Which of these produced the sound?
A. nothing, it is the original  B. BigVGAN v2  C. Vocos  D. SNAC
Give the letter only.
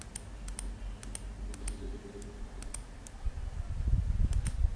A